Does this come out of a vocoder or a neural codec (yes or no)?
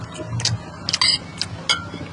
no